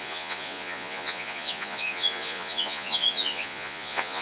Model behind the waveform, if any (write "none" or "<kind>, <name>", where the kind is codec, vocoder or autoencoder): vocoder, Vocos